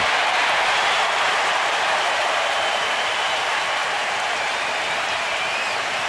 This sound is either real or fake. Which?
fake